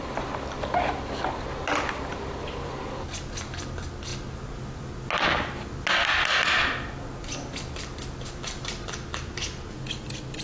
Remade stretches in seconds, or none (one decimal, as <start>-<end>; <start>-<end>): none